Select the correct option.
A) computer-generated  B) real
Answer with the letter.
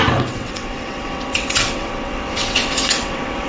A